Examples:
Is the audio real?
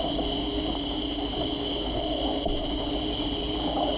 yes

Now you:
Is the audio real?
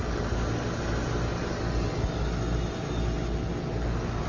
yes